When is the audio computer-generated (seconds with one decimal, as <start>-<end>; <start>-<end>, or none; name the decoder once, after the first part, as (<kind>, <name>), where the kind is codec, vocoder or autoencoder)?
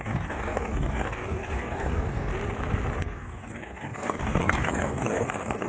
0.0-2.3 (codec, DAC); 3.0-5.7